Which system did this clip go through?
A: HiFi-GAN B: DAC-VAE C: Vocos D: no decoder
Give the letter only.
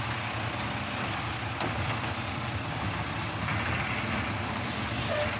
D